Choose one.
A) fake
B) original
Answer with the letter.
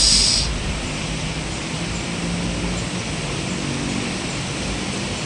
B